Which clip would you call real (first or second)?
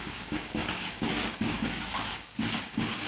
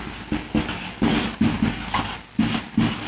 second